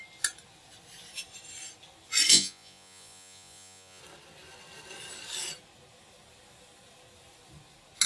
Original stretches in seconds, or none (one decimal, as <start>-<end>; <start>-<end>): 0.0-2.3; 4.0-8.1